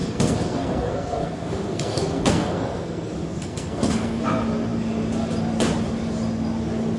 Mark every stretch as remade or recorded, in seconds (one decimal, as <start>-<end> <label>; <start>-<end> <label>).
0.0-4.2 remade; 4.2-7.0 recorded